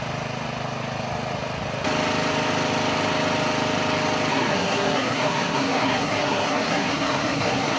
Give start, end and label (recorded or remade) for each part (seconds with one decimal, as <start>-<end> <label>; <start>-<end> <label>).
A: 0.0-4.3 recorded; 4.3-7.8 remade